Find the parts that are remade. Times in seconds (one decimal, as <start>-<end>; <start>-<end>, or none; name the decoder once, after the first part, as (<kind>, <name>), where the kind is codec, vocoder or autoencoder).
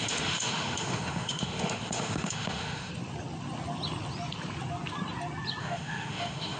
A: 0.0-2.9 (autoencoder, DAC-VAE); 5.6-6.6